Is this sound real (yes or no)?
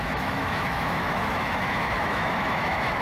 no